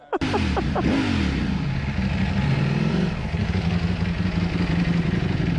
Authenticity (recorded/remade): recorded